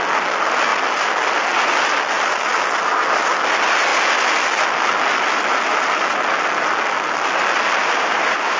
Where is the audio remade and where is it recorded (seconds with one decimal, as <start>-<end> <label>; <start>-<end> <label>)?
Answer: 0.0-7.8 recorded; 7.8-8.6 remade